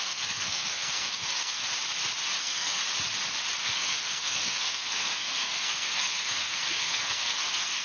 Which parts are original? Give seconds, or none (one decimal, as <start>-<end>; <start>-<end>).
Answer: 1.6-2.4; 2.8-3.6